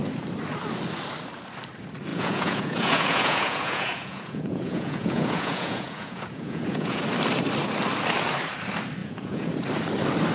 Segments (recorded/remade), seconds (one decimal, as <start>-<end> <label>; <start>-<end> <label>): 0.0-2.1 recorded; 2.1-7.0 remade; 7.0-9.0 recorded; 9.0-9.5 remade; 9.5-10.3 recorded